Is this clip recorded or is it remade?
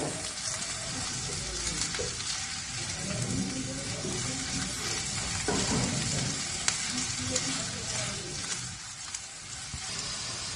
recorded